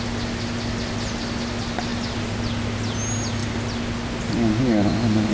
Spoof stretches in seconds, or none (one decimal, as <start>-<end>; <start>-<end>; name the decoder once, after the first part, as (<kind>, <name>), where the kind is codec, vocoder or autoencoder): none